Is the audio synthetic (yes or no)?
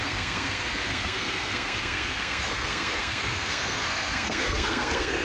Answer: yes